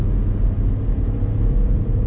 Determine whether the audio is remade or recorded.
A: recorded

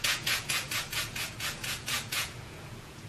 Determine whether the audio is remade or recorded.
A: remade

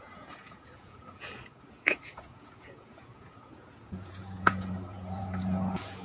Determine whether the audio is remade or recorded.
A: remade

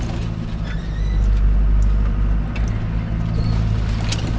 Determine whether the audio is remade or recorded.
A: recorded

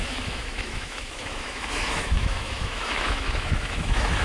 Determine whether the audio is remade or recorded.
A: remade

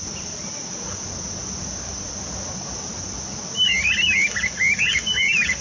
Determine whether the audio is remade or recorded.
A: recorded